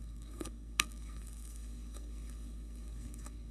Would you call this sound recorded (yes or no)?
no